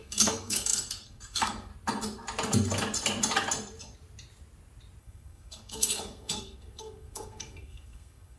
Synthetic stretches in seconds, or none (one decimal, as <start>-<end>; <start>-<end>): 0.0-1.7; 5.0-8.4